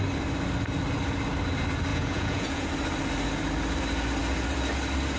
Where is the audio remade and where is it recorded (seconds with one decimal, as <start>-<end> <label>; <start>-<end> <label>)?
0.0-1.9 recorded; 1.9-2.7 remade; 2.7-5.2 recorded